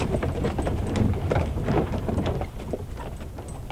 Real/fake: real